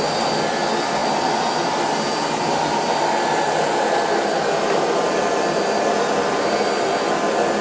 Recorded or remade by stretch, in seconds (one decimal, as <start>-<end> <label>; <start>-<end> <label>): 0.0-7.6 recorded